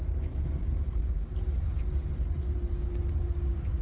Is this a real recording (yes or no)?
yes